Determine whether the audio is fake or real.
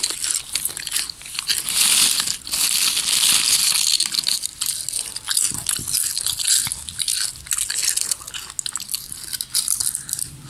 real